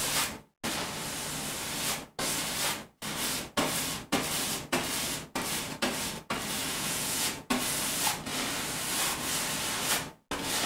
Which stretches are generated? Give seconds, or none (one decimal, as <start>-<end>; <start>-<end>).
6.6-7.5